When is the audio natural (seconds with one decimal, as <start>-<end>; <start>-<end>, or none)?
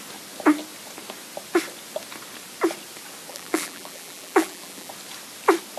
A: 0.0-3.3; 4.9-5.8